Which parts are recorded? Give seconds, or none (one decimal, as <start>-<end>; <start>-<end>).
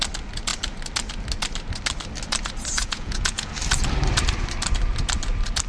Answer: 0.0-2.8; 3.5-5.7